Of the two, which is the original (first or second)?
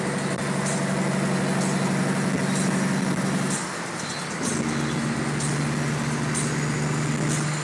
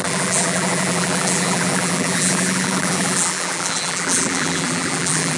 first